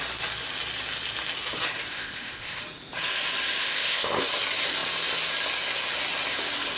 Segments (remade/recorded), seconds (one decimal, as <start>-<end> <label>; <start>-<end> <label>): 0.0-1.9 recorded; 1.9-2.6 remade; 2.6-3.6 recorded; 3.6-4.2 remade; 4.2-6.8 recorded